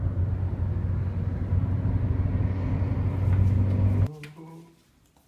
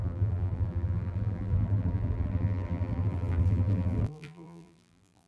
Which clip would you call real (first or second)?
first